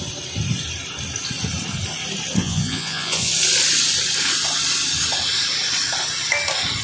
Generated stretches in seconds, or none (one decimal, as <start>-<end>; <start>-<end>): 2.4-3.3